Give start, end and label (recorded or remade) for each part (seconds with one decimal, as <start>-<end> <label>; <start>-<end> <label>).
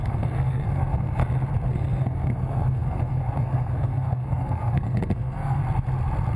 0.0-1.2 remade; 1.2-1.7 recorded; 1.7-5.6 remade; 5.6-6.4 recorded